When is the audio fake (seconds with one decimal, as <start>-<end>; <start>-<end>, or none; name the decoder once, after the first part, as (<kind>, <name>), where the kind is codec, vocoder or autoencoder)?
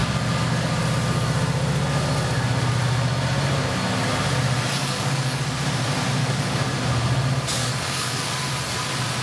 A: 4.8-5.4 (codec, DAC); 6.2-6.7; 7.6-8.3